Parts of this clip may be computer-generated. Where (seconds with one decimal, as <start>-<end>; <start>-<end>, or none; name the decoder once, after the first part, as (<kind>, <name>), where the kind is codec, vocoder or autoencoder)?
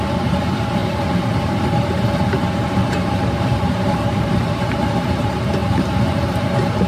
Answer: 0.0-5.6 (vocoder, BigVGAN v2); 6.1-6.9